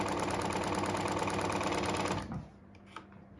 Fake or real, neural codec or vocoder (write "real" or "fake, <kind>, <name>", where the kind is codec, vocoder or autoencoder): real